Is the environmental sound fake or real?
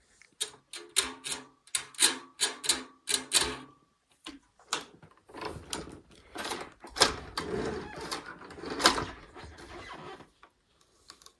real